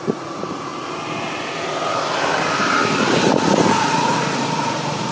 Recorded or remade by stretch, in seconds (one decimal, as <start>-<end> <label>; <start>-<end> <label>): 0.0-0.7 remade; 0.7-3.7 recorded; 3.7-5.1 remade